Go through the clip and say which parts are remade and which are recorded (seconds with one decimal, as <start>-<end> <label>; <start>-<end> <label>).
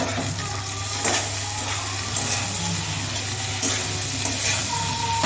0.0-5.3 recorded